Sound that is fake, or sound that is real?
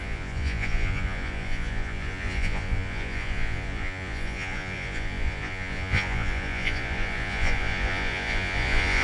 fake